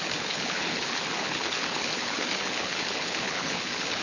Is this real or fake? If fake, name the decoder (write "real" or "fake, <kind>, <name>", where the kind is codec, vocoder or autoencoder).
fake, codec, HILCodec